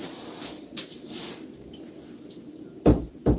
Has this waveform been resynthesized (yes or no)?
no